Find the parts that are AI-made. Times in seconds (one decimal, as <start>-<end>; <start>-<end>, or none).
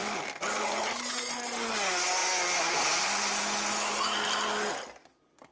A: none